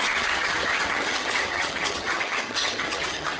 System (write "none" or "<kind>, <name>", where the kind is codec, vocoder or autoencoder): vocoder, HiFi-GAN